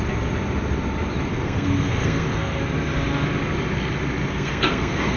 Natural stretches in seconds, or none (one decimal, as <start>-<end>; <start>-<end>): 0.0-1.3; 2.6-4.3